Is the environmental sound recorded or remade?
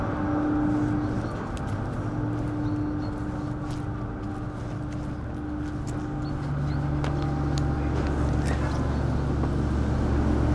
recorded